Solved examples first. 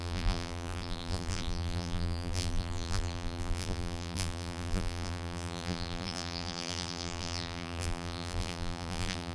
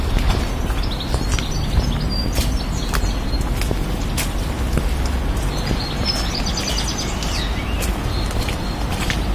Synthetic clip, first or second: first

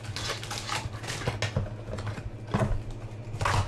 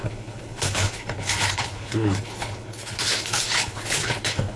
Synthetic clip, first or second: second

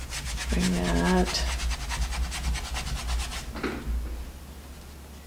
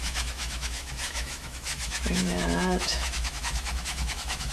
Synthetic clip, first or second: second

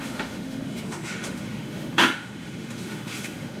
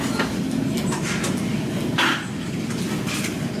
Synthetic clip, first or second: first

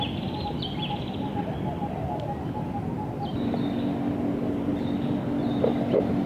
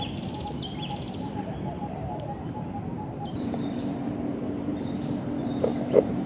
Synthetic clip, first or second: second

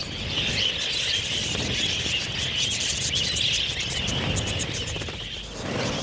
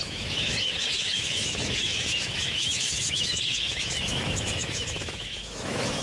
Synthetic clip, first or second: second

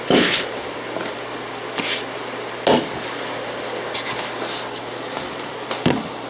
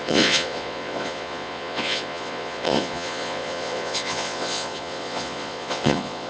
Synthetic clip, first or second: second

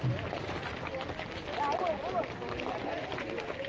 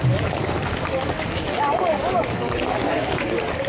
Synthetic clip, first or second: second